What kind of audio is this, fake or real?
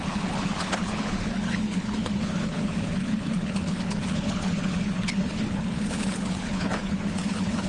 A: fake